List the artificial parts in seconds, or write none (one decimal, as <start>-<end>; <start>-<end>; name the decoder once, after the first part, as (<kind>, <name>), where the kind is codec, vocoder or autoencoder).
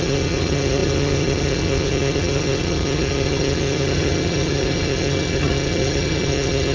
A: 0.0-6.7 (vocoder, HiFi-GAN)